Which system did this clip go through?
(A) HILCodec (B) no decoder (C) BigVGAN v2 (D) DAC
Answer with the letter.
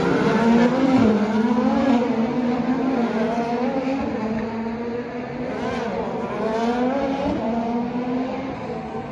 B